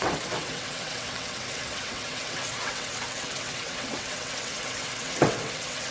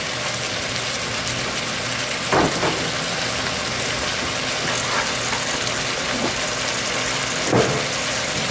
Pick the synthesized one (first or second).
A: first